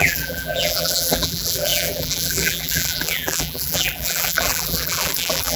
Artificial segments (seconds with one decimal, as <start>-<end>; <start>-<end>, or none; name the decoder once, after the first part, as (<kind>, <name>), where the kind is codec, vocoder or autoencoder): 0.0-5.6 (vocoder, BigVGAN v2)